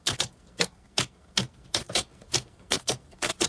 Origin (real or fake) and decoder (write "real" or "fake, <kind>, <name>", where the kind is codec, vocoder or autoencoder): fake, codec, SNAC